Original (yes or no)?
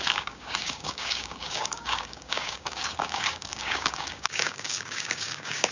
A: no